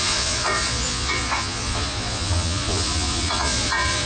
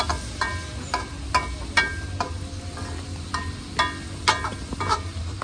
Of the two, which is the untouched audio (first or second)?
second